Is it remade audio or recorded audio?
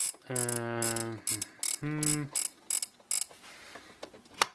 recorded